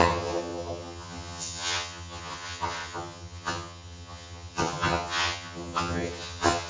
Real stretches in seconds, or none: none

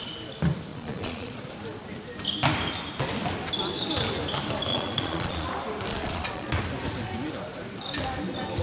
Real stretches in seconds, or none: 0.0-0.7; 1.4-4.7; 5.5-5.9; 6.6-8.6

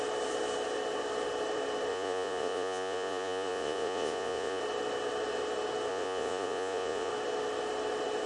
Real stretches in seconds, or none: 0.0-1.9; 4.6-5.9; 7.1-8.3

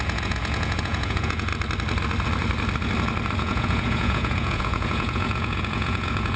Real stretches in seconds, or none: 1.5-3.4